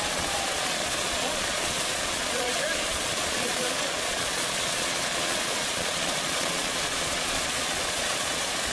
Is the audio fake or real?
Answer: fake